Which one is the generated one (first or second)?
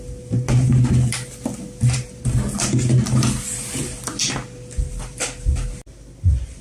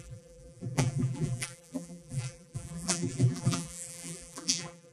second